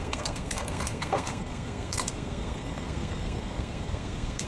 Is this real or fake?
fake